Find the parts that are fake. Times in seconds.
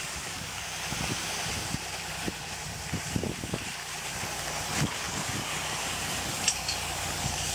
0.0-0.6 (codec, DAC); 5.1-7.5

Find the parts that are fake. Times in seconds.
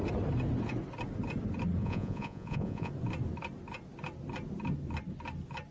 1.8-2.9 (vocoder, Vocos)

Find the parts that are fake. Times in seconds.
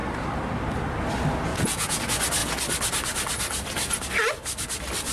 1.5-2.0 (vocoder, Vocos)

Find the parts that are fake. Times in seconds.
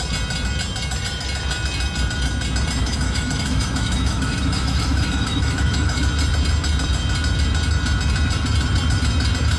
2.8-6.0 (autoencoder, DAC-VAE)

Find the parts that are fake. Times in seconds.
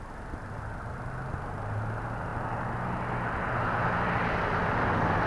none